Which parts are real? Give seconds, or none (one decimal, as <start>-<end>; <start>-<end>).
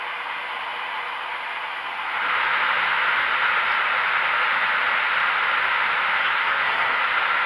0.0-6.2; 7.0-7.5